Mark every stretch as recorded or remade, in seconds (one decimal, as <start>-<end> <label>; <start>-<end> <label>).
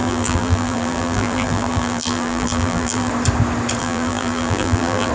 0.0-3.1 remade; 3.1-3.8 recorded; 3.8-5.1 remade